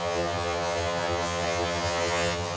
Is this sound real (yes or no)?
no